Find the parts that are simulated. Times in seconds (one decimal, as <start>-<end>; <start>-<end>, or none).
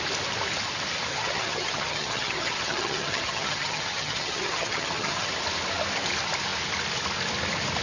1.1-5.3